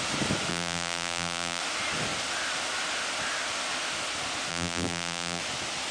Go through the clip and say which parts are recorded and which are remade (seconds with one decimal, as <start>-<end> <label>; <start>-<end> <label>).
0.0-0.5 recorded; 0.5-1.6 remade; 1.6-4.5 recorded; 4.5-5.4 remade; 5.4-5.9 recorded